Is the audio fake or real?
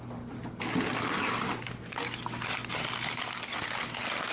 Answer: real